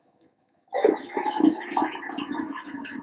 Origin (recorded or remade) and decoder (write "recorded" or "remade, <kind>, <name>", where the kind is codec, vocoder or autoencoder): remade, autoencoder, DAC-VAE